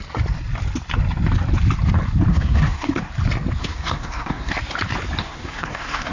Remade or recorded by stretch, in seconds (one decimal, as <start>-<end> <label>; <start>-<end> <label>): 0.0-2.3 recorded; 2.3-3.1 remade; 3.1-3.6 recorded; 3.6-4.5 remade; 4.5-5.2 recorded; 5.2-6.1 remade